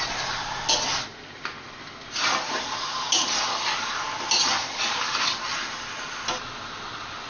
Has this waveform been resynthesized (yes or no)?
no